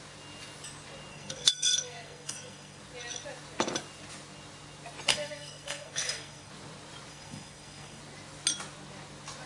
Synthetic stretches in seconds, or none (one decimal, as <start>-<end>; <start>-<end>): 1.1-2.8; 5.1-6.5; 7.1-8.0